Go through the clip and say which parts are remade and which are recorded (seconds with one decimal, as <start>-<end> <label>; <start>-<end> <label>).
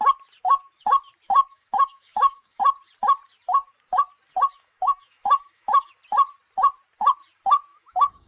0.0-1.4 recorded; 1.4-2.6 remade; 2.6-4.5 recorded; 4.5-5.9 remade; 5.9-7.7 recorded; 7.7-8.3 remade